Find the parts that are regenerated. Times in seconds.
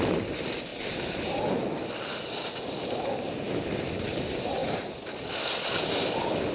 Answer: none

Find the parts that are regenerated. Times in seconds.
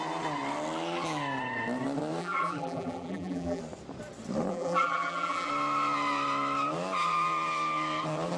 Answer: 2.2-3.6 (vocoder, BigVGAN v2); 4.5-5.5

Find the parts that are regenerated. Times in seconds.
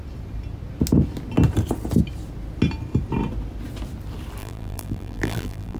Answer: 4.4-5.8 (vocoder, BigVGAN v2)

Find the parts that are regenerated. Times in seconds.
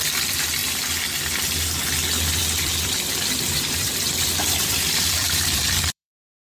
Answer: 2.4-6.5 (vocoder, BigVGAN v2)